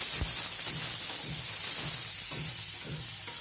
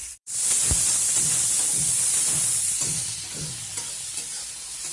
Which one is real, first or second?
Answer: first